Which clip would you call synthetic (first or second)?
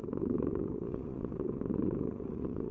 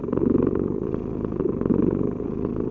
first